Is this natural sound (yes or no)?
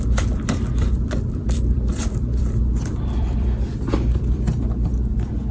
no